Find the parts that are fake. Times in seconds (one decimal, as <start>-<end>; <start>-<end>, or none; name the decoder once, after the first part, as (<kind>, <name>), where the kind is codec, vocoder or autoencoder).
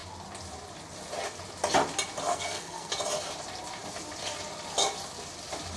2.3-2.9 (codec, SNAC)